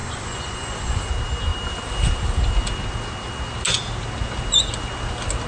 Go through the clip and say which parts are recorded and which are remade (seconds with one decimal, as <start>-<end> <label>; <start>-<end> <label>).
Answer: 0.0-1.1 remade; 1.1-5.5 recorded